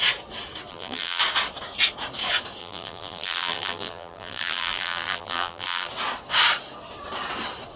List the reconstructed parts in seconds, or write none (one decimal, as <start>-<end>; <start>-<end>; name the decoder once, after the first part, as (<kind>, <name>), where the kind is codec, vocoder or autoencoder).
0.7-1.2 (vocoder, BigVGAN v2); 2.6-5.9